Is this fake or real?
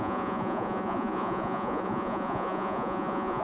fake